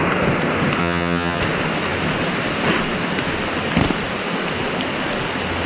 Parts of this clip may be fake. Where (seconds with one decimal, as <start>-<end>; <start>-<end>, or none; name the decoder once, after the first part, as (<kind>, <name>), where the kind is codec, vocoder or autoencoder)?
0.8-1.4 (vocoder, HiFi-GAN)